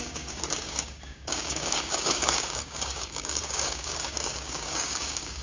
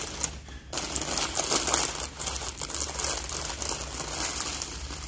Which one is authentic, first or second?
second